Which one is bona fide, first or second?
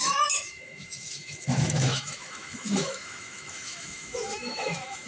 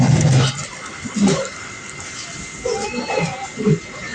second